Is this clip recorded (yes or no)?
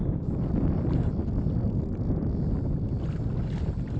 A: yes